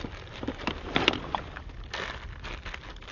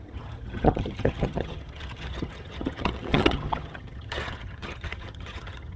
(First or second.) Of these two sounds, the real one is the first